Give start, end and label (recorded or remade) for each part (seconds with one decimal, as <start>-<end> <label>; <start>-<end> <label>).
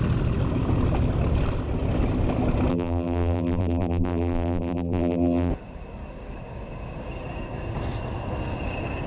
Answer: 0.0-2.7 recorded; 2.7-5.5 remade; 5.5-9.1 recorded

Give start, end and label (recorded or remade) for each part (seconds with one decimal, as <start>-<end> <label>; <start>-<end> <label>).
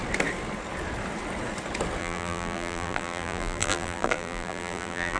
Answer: 0.0-2.0 recorded; 2.0-5.2 remade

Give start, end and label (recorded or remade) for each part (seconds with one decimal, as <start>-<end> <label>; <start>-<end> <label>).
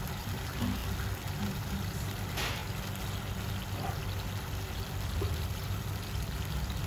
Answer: 0.0-0.8 remade; 0.8-1.6 recorded; 1.6-2.6 remade; 2.6-6.9 recorded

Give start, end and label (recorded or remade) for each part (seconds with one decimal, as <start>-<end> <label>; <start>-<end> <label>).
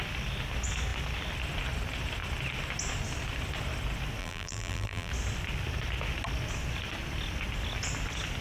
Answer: 0.0-4.2 recorded; 4.2-5.1 remade; 5.1-8.4 recorded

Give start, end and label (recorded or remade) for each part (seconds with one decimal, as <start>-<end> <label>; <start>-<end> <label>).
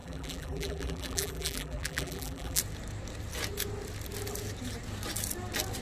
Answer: 0.0-2.6 remade; 2.6-5.8 recorded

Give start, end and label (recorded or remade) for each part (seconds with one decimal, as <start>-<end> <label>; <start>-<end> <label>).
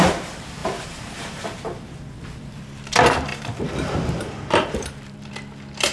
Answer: 0.0-0.6 recorded; 0.6-1.6 remade; 1.6-3.3 recorded; 3.3-5.3 remade; 5.3-5.9 recorded